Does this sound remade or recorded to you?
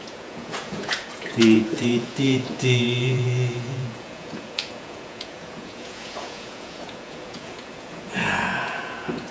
remade